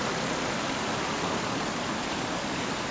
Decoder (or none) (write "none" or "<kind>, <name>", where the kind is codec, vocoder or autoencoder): none